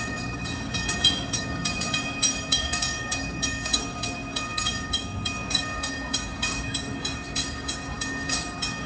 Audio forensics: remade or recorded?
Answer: remade